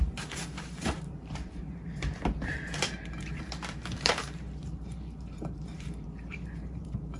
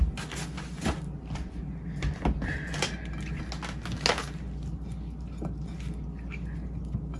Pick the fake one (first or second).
first